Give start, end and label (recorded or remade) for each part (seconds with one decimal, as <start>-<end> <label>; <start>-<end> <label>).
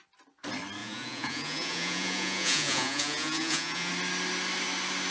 0.0-0.8 recorded; 0.8-3.9 remade; 3.9-5.1 recorded